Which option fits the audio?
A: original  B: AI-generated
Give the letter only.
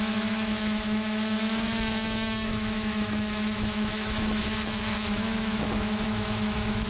B